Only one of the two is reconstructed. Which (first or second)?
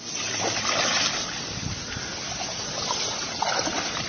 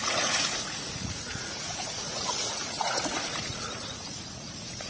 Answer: second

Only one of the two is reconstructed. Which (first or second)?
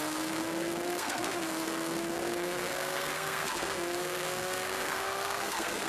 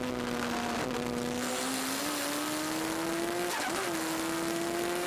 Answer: first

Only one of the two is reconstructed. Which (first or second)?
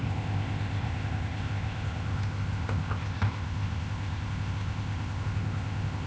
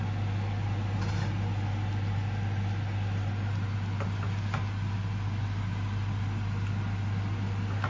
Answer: first